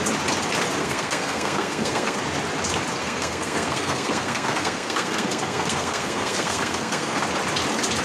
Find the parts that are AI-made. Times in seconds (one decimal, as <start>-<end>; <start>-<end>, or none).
0.8-2.2; 3.0-7.2